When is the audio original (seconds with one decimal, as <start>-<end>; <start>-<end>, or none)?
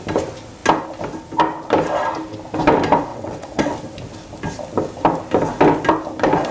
0.0-3.1; 3.7-6.5